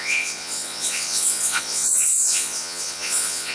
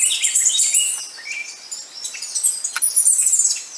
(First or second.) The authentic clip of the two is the second